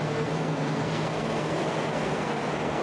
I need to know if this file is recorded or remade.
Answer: remade